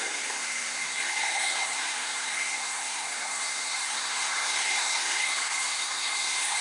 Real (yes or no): no